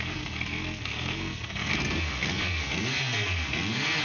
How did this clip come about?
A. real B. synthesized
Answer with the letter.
B